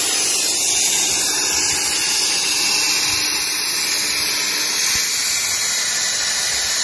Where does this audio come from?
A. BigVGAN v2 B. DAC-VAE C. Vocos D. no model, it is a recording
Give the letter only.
D